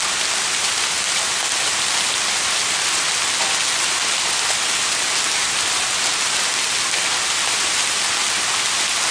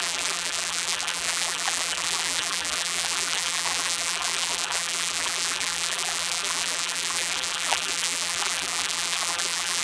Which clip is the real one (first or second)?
first